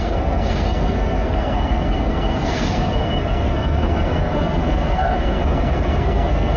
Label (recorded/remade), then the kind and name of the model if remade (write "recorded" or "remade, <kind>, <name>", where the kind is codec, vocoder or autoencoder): remade, codec, SNAC